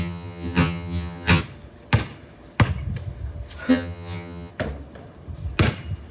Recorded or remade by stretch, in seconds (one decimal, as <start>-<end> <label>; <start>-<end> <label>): 0.0-1.4 remade; 1.4-3.7 recorded; 3.7-4.5 remade; 4.5-6.1 recorded